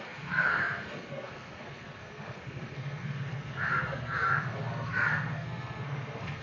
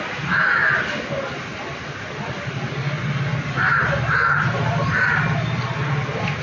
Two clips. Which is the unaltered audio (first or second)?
second